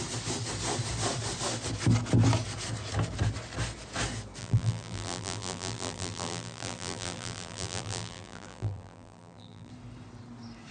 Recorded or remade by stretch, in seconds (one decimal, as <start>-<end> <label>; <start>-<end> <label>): 0.0-4.4 recorded; 4.4-9.7 remade; 9.7-10.7 recorded